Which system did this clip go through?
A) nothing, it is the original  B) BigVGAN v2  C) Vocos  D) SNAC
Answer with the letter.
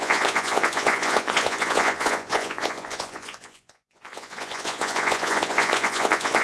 C